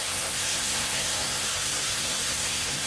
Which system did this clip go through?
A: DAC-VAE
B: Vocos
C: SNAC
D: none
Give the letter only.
C